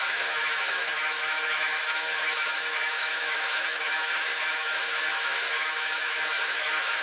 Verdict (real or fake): fake